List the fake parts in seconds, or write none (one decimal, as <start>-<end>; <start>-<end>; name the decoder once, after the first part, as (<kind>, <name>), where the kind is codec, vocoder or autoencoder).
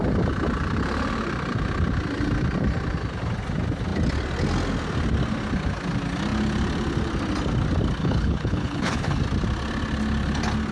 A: 8.0-9.2 (codec, HILCodec)